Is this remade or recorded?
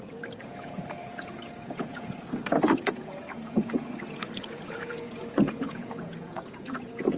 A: remade